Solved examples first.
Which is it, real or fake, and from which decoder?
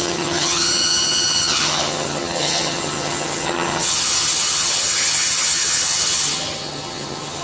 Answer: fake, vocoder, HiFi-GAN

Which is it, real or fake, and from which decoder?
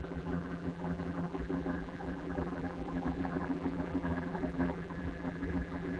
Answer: fake, vocoder, BigVGAN v2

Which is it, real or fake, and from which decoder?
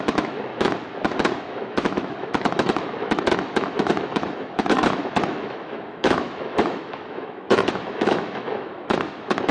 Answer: fake, autoencoder, DAC-VAE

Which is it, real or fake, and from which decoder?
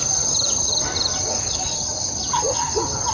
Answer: real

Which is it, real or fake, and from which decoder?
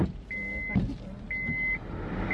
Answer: real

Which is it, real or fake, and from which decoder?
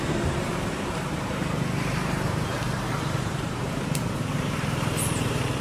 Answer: fake, vocoder, BigVGAN v2